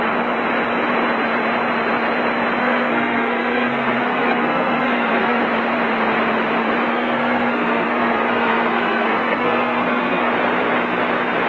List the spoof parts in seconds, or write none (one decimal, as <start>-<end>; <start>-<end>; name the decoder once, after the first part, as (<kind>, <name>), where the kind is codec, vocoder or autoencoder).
2.6-5.4 (codec, SNAC); 6.9-10.3